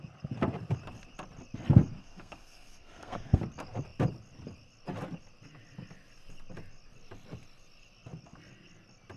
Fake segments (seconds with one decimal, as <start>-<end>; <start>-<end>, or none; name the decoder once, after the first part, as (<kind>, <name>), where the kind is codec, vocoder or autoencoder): 2.0-3.4 (codec, SNAC)